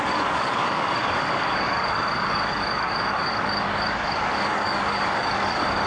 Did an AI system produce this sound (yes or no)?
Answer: yes